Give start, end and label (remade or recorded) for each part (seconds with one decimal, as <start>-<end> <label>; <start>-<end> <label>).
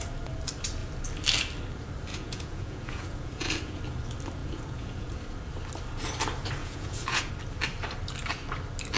0.0-2.1 recorded; 2.1-3.8 remade; 3.8-4.4 recorded; 4.4-5.1 remade; 5.1-6.6 recorded; 6.6-7.3 remade; 7.3-9.0 recorded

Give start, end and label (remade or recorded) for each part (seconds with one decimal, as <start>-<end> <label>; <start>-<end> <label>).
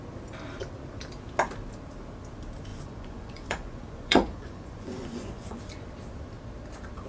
0.0-2.7 recorded; 2.7-5.6 remade; 5.6-7.1 recorded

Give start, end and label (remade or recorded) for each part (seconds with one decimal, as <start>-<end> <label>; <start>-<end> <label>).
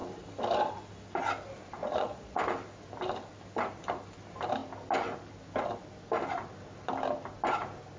0.0-1.8 recorded; 1.8-2.4 remade; 2.4-8.0 recorded